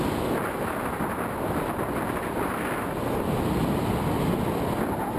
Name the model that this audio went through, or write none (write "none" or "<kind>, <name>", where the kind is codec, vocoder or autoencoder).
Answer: none